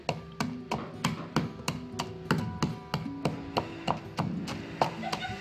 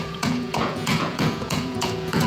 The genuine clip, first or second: first